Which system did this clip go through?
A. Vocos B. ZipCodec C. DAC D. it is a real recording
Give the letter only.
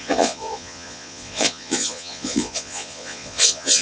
A